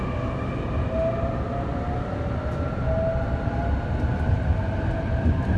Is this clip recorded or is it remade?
recorded